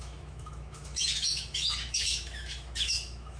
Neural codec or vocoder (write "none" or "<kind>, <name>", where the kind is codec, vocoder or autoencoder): autoencoder, DAC-VAE